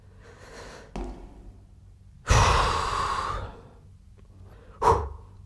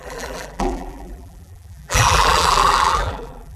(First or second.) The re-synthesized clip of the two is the second